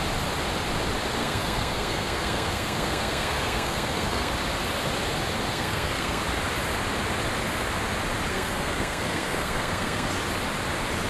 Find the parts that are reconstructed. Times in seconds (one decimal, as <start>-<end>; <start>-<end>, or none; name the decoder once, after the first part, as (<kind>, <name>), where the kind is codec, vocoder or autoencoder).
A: 1.2-4.3 (codec, SNAC); 5.5-6.2; 8.3-10.1